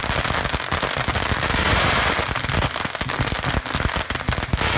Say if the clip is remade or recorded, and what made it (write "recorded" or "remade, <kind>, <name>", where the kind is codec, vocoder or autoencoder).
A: recorded